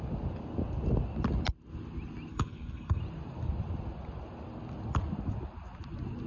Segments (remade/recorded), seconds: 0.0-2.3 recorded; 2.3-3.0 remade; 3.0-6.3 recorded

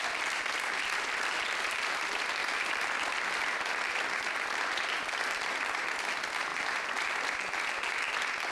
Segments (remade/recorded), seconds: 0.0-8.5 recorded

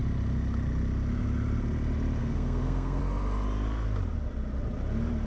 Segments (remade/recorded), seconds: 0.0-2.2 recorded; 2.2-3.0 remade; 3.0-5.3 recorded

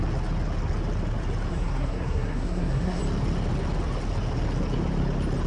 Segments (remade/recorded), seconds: 0.0-1.5 recorded; 1.5-3.0 remade; 3.0-5.5 recorded

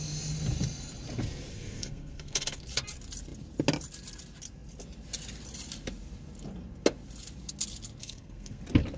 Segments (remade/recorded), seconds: 0.0-1.5 recorded; 1.5-2.6 remade; 2.6-8.0 recorded; 8.0-8.6 remade; 8.6-9.0 recorded

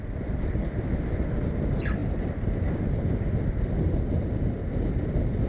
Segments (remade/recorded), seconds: 0.0-5.5 recorded